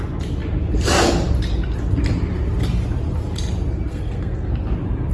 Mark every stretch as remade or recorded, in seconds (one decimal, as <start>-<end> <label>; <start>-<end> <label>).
0.0-3.9 recorded; 3.9-4.5 remade; 4.5-5.1 recorded